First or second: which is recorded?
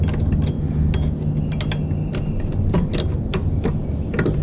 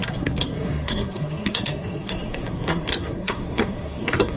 first